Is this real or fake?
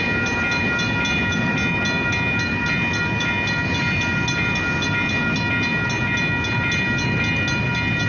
real